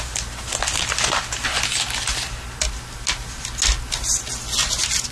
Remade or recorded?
recorded